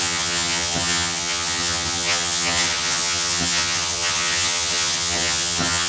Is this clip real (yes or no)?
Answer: no